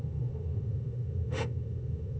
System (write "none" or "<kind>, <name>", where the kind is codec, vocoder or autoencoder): autoencoder, DAC-VAE